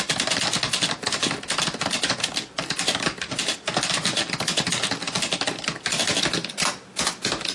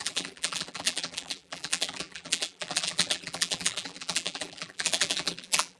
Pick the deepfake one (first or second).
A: second